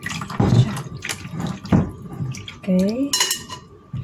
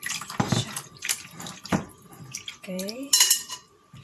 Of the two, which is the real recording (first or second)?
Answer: first